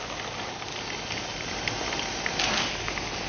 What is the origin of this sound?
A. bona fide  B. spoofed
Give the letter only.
A